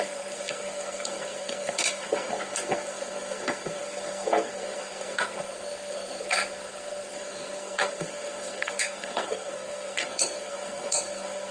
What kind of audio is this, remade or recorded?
remade